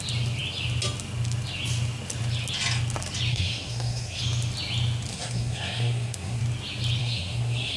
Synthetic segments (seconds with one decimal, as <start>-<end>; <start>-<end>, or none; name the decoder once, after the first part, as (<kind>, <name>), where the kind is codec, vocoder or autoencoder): 3.3-4.2 (codec, SNAC); 5.1-6.4; 7.0-7.8